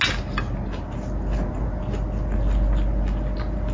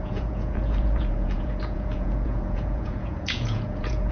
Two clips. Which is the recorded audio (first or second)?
first